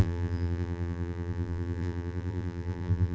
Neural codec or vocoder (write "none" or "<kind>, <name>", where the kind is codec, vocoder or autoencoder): vocoder, BigVGAN v2